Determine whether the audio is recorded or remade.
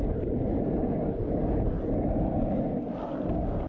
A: recorded